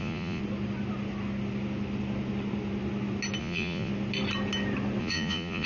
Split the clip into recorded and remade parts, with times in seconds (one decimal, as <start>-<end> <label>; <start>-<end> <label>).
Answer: 0.0-0.4 remade; 0.4-3.4 recorded; 3.4-3.9 remade; 3.9-5.0 recorded; 5.0-5.7 remade